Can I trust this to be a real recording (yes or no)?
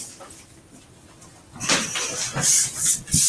yes